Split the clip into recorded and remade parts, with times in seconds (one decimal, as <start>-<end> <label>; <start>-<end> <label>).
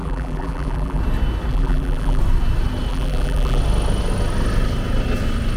0.0-1.0 remade; 1.0-1.5 recorded; 1.5-2.2 remade; 2.2-2.9 recorded; 2.9-3.6 remade; 3.6-5.6 recorded